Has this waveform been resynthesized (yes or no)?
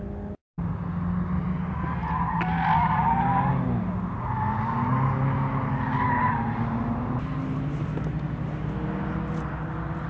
no